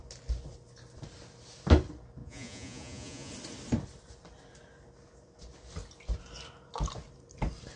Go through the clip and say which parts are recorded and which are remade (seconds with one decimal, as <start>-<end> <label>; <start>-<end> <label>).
0.0-2.2 recorded; 2.2-3.3 remade; 3.3-7.8 recorded